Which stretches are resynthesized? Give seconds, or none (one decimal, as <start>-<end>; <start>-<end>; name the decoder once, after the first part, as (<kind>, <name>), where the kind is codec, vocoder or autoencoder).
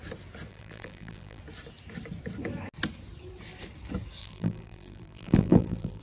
0.5-1.4 (vocoder, BigVGAN v2); 4.2-6.0